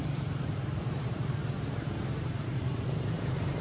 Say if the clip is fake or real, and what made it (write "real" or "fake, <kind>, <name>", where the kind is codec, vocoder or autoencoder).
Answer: fake, vocoder, BigVGAN v2